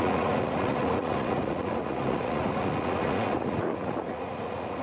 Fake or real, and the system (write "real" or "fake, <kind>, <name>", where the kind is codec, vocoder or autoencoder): fake, vocoder, Vocos